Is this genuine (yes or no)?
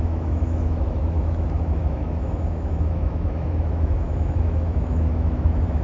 no